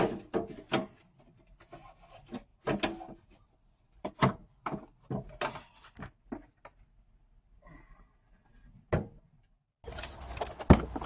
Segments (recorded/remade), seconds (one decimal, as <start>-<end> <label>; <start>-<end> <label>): 0.0-11.1 recorded